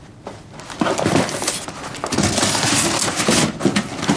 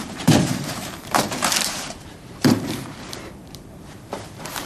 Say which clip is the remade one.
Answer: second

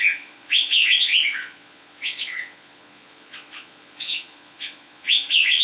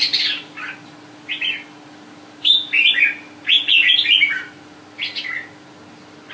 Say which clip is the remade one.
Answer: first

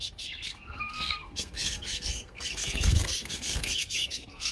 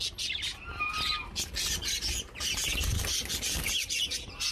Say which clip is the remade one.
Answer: first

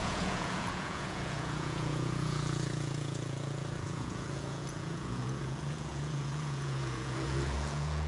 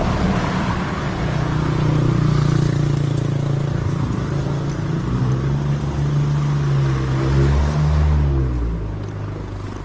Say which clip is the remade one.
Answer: first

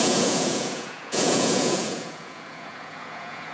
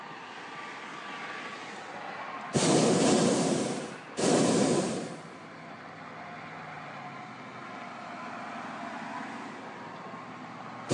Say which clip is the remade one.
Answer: first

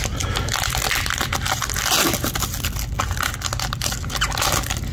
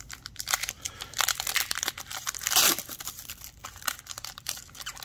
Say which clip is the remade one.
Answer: second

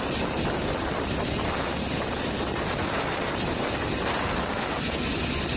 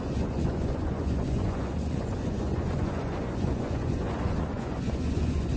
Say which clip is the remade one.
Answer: second